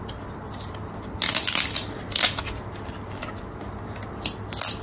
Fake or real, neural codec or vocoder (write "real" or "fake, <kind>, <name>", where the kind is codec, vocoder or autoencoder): real